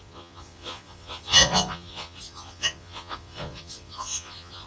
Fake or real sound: fake